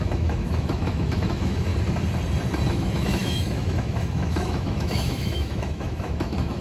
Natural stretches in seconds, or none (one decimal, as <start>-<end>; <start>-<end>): 1.7-2.7